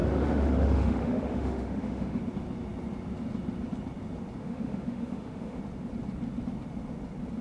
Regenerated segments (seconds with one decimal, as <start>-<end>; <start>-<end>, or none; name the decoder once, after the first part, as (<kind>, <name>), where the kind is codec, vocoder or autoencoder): 0.0-2.2 (autoencoder, DAC-VAE); 4.4-5.6